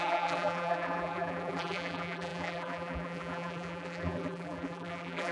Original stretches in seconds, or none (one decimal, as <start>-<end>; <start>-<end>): none